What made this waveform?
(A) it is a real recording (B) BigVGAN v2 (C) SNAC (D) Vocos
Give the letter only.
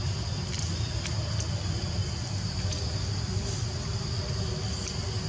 A